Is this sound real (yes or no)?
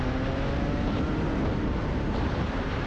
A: yes